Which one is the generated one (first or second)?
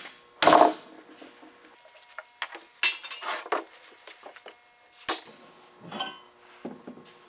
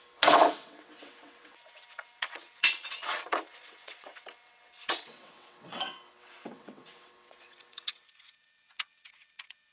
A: second